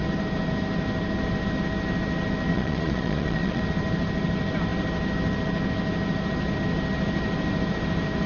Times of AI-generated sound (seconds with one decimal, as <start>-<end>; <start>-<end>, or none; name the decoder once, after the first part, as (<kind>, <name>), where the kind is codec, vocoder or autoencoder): 2.5-3.6 (vocoder, Vocos)